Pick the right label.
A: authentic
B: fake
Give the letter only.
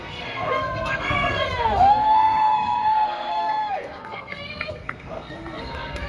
B